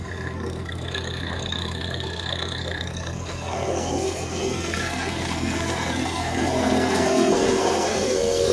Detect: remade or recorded remade